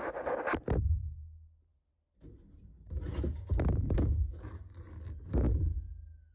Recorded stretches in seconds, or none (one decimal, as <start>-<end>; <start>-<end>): 0.0-6.3